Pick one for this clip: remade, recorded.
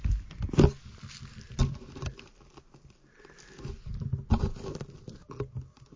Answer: recorded